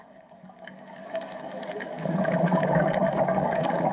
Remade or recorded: remade